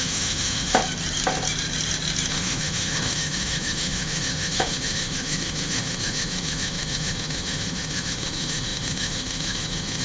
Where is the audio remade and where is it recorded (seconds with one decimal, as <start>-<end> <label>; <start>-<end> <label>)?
0.0-0.8 remade; 0.8-2.3 recorded; 2.3-10.0 remade